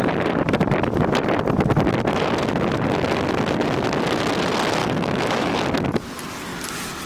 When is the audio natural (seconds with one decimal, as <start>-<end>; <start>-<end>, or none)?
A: 0.0-4.8; 5.6-7.1